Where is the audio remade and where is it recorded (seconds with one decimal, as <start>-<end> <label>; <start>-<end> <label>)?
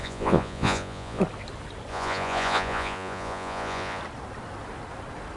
0.0-1.2 remade; 1.2-1.9 recorded; 1.9-4.0 remade; 4.0-5.4 recorded